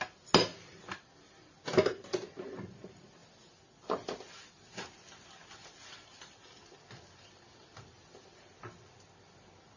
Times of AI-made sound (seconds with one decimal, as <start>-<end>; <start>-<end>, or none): none